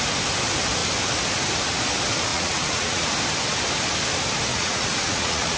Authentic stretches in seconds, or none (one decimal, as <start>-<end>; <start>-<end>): 0.0-2.3; 3.1-4.5

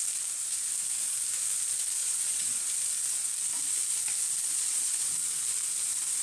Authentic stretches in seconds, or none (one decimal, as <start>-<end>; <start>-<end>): 0.0-2.0; 2.7-4.5; 5.1-6.2

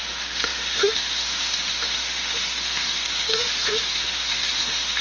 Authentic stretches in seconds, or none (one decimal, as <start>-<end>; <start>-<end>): none

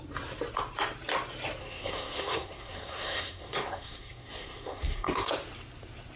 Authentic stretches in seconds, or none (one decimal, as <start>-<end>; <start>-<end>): 0.0-1.6; 5.3-6.2

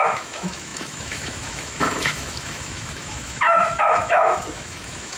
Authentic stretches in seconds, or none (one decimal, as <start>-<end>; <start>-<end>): none

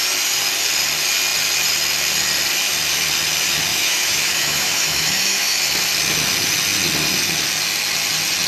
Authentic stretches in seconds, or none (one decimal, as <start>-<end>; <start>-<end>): 0.0-3.7; 5.6-8.5